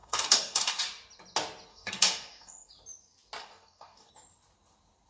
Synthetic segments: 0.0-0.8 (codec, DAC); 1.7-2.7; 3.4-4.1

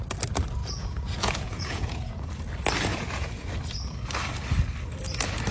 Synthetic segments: 0.6-2.3 (vocoder, Vocos); 2.9-3.5

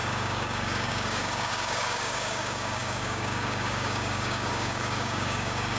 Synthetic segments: 0.0-5.8 (codec, DAC)

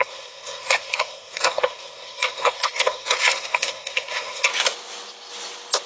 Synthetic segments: 0.0-4.5 (codec, SNAC)

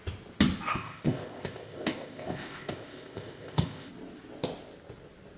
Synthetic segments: 0.7-3.9 (codec, ZipCodec)

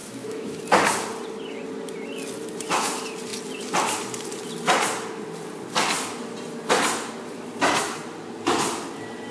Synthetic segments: 0.0-0.6 (autoencoder, DAC-VAE)